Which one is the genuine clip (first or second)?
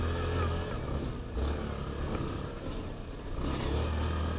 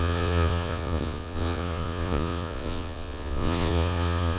first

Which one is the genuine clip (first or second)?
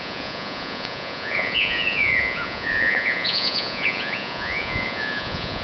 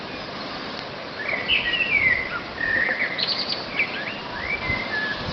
second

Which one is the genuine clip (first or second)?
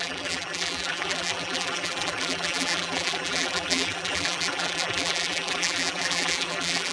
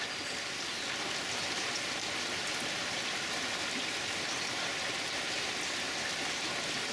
second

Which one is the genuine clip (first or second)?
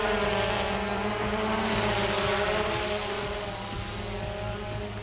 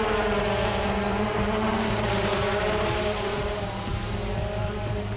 first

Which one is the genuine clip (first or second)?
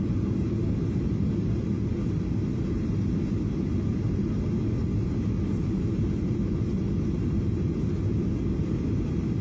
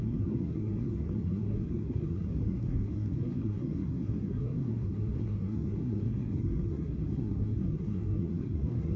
first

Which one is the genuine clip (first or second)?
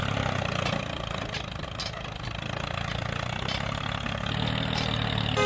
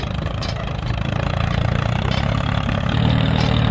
first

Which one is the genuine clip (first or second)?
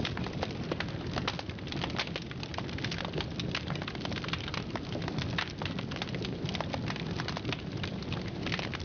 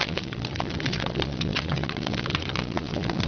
first